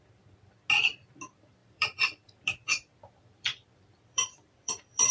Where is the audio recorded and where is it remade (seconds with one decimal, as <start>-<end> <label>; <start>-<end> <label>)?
0.0-1.6 recorded; 1.6-5.1 remade